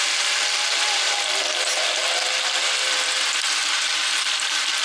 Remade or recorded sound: recorded